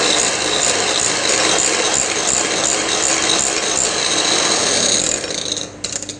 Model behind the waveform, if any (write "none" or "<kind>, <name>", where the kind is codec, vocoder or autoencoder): none